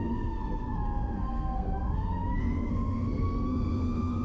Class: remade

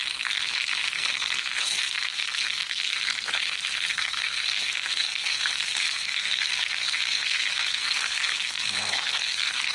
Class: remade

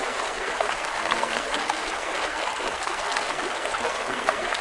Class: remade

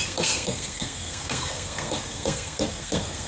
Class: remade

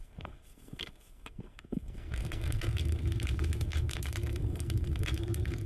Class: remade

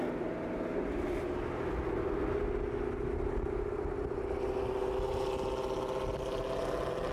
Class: recorded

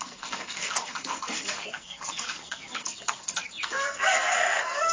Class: remade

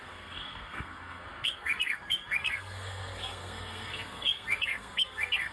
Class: remade